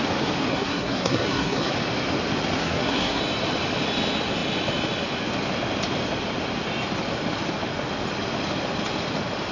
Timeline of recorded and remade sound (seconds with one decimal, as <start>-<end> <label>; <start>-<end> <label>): 0.0-0.5 recorded; 0.5-1.7 remade; 1.7-2.6 recorded; 2.6-3.2 remade; 3.2-9.5 recorded